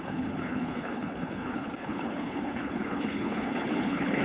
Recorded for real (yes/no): no